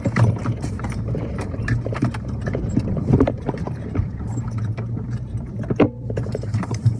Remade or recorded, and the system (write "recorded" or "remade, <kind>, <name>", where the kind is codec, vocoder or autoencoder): remade, vocoder, BigVGAN v2